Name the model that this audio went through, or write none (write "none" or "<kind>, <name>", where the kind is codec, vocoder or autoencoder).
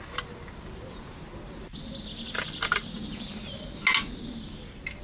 none